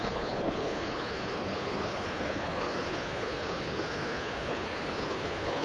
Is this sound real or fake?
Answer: fake